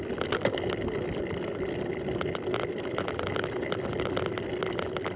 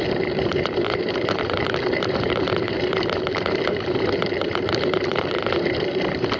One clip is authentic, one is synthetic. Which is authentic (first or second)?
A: first